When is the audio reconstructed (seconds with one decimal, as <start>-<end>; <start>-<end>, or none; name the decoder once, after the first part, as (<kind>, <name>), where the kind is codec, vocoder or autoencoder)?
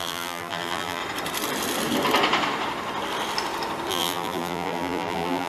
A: 0.0-1.0 (vocoder, BigVGAN v2); 3.9-5.5